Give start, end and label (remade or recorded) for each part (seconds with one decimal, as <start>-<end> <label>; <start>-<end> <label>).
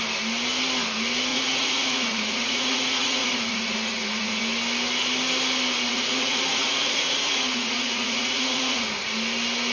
0.0-1.3 recorded; 1.3-4.4 remade; 4.4-5.9 recorded; 5.9-8.9 remade; 8.9-9.7 recorded